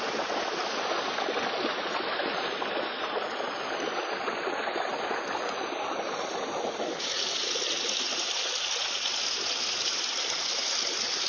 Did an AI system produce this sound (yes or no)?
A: no